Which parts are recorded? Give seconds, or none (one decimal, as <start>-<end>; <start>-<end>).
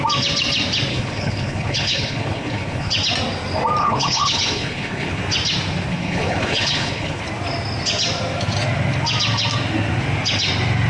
0.0-0.9; 2.9-3.8; 5.2-5.9; 7.2-10.9